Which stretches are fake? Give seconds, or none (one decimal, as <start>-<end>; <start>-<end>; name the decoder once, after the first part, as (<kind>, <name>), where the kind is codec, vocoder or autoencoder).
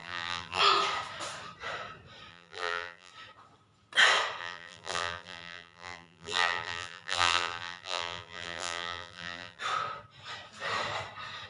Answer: 0.0-0.6 (vocoder, BigVGAN v2); 2.3-3.1; 4.4-9.6